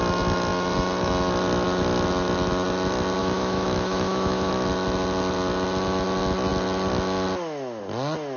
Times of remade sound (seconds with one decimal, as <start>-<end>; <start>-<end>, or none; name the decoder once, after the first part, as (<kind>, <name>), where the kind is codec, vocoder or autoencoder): 3.2-4.5 (autoencoder, DAC-VAE)